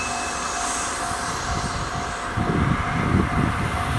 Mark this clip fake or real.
real